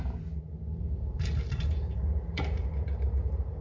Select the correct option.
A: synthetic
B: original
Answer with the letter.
A